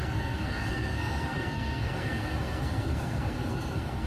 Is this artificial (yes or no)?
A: yes